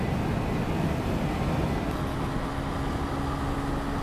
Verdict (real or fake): real